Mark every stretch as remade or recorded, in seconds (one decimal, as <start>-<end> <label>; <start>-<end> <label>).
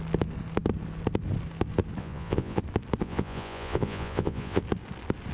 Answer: 0.0-2.0 recorded; 2.0-2.6 remade; 2.6-3.0 recorded; 3.0-4.6 remade; 4.6-5.3 recorded